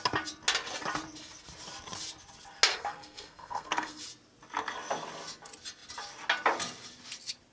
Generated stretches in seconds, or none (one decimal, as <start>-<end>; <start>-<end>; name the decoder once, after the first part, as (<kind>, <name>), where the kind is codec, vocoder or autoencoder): 2.7-4.0 (codec, SNAC)